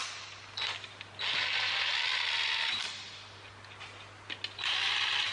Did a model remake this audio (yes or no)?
no